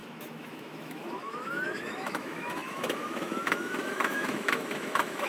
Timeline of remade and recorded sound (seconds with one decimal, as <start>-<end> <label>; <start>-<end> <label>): 0.0-5.3 remade